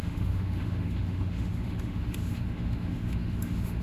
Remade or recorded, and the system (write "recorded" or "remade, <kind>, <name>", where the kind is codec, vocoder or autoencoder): remade, autoencoder, DAC-VAE